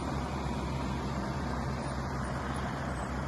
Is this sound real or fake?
fake